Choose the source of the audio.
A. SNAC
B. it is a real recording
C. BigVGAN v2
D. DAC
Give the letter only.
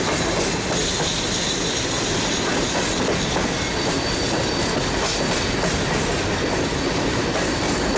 B